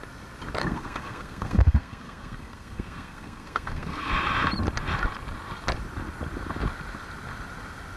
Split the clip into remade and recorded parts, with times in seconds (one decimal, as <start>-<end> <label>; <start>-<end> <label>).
0.0-0.6 recorded; 0.6-4.1 remade; 4.1-8.0 recorded